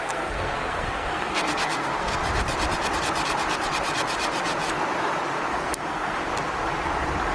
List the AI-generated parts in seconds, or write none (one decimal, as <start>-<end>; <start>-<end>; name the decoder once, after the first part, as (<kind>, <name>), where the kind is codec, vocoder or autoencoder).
0.0-2.2 (codec, SNAC); 5.5-6.3